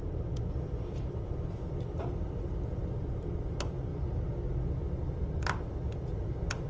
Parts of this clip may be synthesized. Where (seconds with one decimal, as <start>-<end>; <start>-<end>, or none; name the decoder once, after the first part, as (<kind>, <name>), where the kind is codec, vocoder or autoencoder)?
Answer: 0.0-3.9 (vocoder, BigVGAN v2); 4.6-6.7